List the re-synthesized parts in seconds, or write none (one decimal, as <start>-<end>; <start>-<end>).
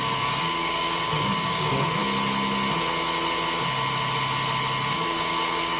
0.0-2.0; 4.9-5.8